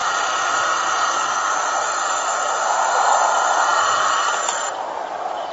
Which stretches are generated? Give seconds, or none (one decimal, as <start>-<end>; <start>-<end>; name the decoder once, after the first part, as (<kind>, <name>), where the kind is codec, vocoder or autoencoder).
none